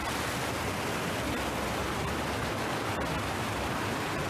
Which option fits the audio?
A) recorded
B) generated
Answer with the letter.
A